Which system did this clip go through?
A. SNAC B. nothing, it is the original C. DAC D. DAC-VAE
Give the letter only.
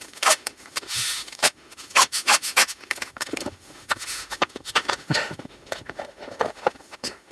D